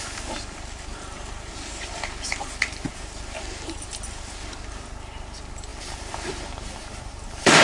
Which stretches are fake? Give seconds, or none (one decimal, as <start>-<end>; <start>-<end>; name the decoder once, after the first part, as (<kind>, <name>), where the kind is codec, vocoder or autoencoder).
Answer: 5.7-7.6 (vocoder, BigVGAN v2)